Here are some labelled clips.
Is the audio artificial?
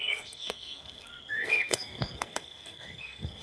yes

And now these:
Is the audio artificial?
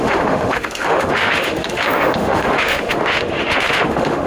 yes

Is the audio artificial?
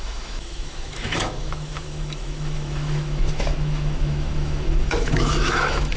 yes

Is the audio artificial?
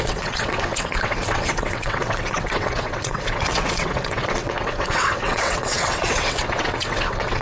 yes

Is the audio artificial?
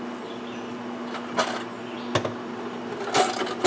no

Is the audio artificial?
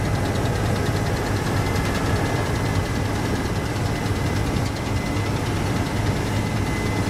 no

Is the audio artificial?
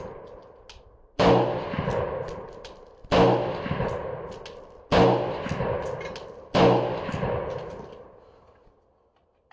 no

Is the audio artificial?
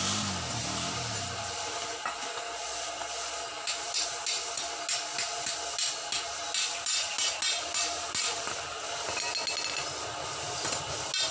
no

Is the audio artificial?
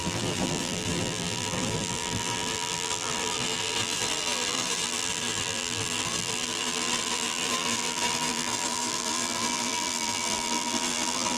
yes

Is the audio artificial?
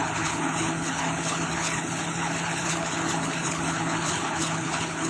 yes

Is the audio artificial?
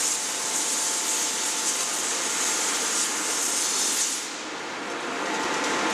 no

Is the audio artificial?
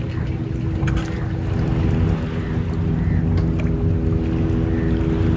no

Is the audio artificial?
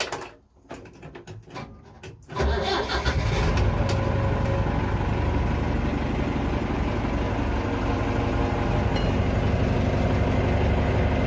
no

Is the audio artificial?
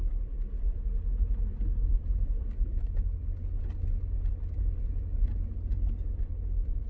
no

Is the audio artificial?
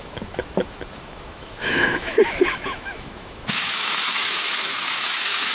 yes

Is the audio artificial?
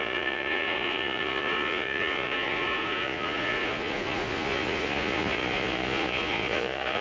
yes